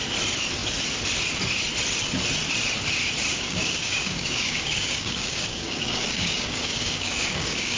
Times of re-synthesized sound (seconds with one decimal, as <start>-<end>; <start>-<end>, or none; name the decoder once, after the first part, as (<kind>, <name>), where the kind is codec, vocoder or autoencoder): 3.3-7.8 (codec, DAC)